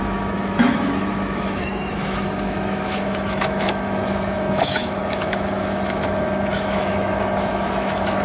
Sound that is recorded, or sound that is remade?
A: remade